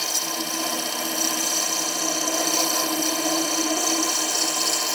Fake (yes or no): no